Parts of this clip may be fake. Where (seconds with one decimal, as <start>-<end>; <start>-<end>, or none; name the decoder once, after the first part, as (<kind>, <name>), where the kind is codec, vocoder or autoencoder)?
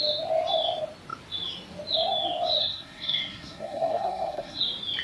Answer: 2.6-4.6 (codec, SNAC)